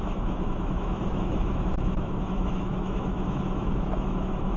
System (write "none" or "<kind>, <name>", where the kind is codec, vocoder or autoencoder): autoencoder, DAC-VAE